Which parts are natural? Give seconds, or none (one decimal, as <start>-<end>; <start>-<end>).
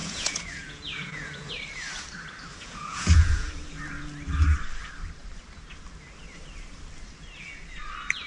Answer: 1.5-2.5; 3.5-8.3